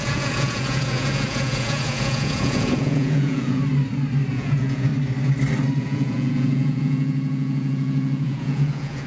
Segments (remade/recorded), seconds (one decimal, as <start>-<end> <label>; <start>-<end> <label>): 0.0-3.6 remade; 3.6-4.3 recorded; 4.3-4.9 remade; 4.9-5.8 recorded; 5.8-9.1 remade